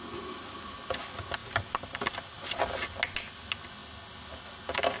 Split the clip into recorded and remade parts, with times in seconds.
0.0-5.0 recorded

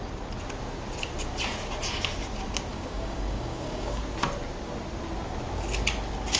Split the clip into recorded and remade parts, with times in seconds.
0.0-2.7 recorded; 2.7-4.0 remade; 4.0-6.4 recorded

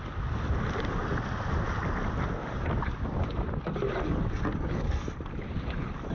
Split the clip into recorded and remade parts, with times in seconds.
0.0-6.1 recorded